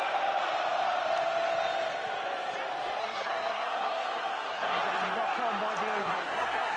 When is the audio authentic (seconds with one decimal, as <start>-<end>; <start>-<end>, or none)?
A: 0.0-3.0; 4.8-6.0